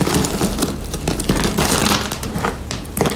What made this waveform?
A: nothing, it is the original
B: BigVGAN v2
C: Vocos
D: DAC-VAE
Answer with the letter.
B